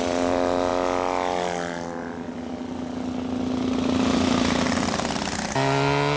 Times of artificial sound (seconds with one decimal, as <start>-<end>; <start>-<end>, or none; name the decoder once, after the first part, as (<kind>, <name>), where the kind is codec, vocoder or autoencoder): none